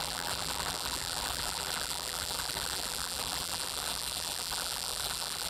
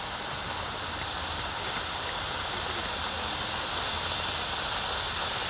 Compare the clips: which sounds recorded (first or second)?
second